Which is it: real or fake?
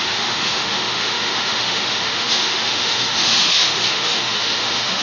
fake